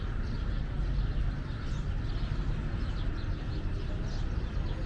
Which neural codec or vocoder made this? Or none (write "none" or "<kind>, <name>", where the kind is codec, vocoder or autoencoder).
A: none